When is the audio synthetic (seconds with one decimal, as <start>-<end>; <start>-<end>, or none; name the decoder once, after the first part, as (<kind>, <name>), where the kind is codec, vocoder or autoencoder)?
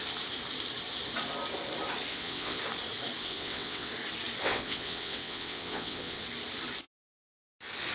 2.1-2.6 (vocoder, WaveNeXt); 3.2-3.9; 4.4-6.2